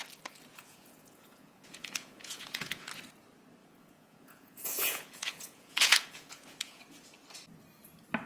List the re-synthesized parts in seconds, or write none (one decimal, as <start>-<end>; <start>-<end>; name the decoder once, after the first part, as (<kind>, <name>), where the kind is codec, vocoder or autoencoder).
0.5-2.9 (vocoder, Vocos); 3.6-6.8